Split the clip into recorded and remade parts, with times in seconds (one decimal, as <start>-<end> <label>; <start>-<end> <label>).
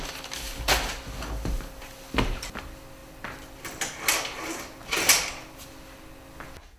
0.0-6.8 recorded